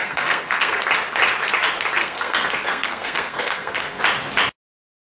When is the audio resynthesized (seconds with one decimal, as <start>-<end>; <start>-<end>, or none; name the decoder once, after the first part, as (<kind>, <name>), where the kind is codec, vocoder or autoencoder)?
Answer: 0.0-0.8 (codec, SNAC); 2.0-4.0